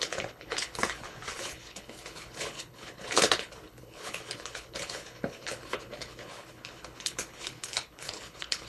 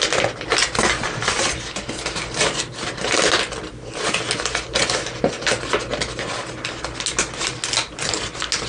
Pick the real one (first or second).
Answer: second